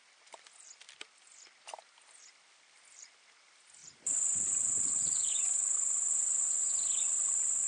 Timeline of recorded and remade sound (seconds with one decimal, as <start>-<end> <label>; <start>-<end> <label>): 0.0-7.7 recorded